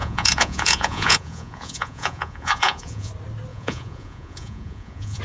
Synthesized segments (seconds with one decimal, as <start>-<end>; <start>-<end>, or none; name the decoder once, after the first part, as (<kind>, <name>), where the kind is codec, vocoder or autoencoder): 0.0-3.1 (vocoder, Vocos); 3.5-5.2